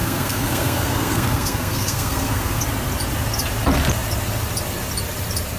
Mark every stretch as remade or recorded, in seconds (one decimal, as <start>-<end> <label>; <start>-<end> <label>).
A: 0.0-2.6 remade; 2.6-5.6 recorded